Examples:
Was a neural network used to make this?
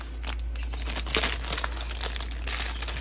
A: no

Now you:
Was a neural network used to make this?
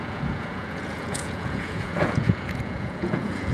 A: yes